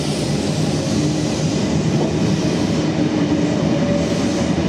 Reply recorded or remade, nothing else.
recorded